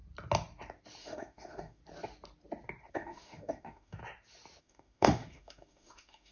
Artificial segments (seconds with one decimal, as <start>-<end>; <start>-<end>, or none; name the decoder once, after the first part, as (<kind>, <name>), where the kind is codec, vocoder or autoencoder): 1.0-1.8 (autoencoder, DAC-VAE); 2.9-4.0; 4.6-6.3

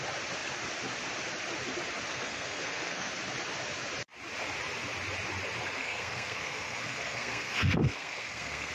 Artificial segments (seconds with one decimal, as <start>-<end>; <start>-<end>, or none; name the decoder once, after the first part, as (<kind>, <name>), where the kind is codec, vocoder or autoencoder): 2.1-3.1 (codec, SNAC); 5.8-8.7

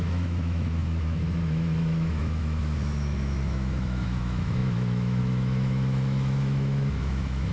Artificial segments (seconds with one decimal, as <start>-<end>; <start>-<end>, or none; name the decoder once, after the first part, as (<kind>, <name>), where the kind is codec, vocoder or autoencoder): 0.0-7.5 (autoencoder, DAC-VAE)

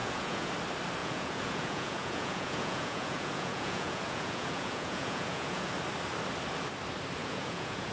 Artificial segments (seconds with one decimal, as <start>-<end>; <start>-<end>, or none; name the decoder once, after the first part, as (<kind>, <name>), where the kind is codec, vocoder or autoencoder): 0.0-0.5 (vocoder, Vocos); 1.0-5.7; 7.2-7.9

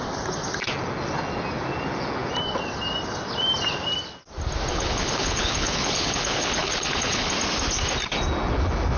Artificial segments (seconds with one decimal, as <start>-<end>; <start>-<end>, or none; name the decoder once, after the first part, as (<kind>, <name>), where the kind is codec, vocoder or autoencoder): 4.7-7.3 (codec, HILCodec)

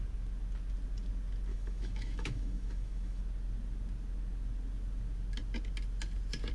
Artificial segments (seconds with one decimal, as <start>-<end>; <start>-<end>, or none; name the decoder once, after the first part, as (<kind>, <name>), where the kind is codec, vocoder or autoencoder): 1.5-3.2 (autoencoder, DAC-VAE)